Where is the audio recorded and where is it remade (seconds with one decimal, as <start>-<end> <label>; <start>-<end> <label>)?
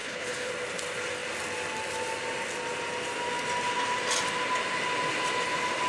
0.0-0.5 remade; 0.5-5.9 recorded